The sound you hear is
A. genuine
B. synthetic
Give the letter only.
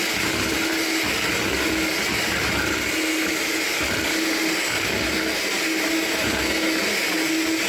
A